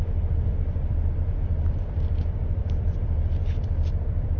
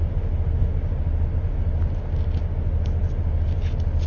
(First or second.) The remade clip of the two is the first